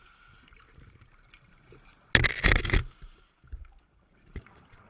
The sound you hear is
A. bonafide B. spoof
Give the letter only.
A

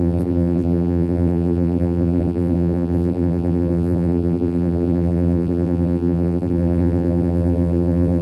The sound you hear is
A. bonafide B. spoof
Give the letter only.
B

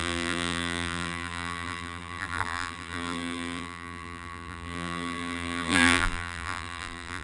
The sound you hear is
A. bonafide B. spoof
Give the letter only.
B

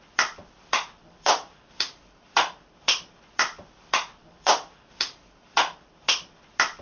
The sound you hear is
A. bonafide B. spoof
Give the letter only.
B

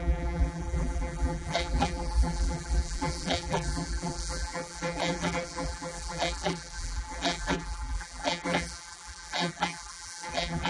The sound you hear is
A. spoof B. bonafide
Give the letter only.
A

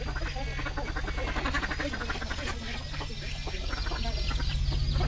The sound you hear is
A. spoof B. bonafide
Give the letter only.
B